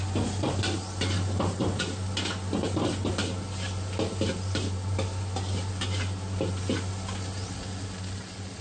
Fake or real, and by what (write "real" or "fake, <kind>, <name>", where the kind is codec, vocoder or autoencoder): real